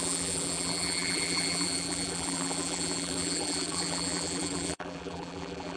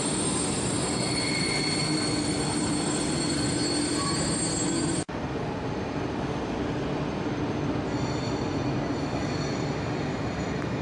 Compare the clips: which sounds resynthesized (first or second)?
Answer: first